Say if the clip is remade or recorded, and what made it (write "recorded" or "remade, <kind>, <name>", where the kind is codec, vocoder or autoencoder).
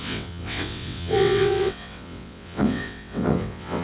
remade, vocoder, WaveNeXt